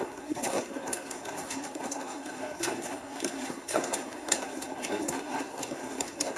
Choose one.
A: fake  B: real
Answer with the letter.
A